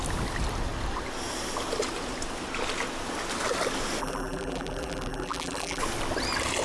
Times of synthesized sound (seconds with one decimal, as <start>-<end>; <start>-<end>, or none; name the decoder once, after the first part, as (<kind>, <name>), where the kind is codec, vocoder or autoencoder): 4.0-5.8 (vocoder, BigVGAN v2)